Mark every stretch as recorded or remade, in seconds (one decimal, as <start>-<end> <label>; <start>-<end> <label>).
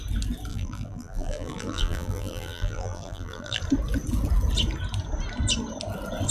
0.0-0.5 recorded; 0.5-3.6 remade; 3.6-6.3 recorded